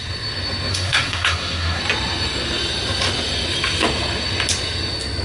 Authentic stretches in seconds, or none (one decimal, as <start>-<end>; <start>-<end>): 0.0-0.7; 1.8-5.2